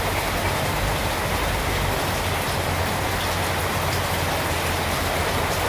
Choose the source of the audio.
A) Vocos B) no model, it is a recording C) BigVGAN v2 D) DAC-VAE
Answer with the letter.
B